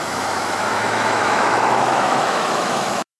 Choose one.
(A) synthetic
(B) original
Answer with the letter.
A